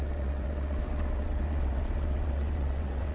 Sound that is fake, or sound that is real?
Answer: fake